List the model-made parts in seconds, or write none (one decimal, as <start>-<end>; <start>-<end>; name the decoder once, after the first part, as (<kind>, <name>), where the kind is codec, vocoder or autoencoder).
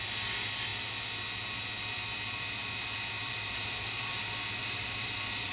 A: 3.2-4.1 (vocoder, BigVGAN v2); 4.6-5.5